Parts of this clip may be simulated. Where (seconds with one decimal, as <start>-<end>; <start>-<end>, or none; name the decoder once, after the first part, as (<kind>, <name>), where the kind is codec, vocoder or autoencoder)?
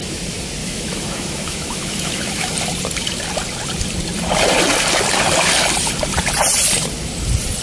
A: 0.6-2.5 (autoencoder, DAC-VAE)